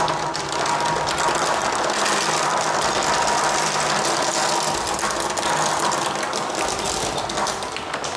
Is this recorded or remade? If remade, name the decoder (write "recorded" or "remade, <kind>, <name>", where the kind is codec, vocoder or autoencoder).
recorded